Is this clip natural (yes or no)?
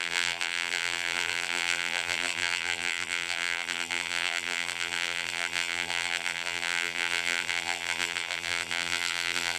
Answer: no